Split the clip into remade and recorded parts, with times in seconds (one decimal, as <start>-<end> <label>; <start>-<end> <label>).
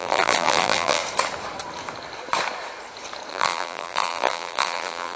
0.0-1.0 remade; 1.0-3.3 recorded; 3.3-5.2 remade